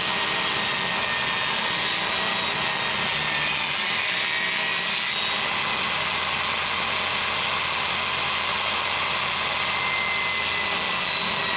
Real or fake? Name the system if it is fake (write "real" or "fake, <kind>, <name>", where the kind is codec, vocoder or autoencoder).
real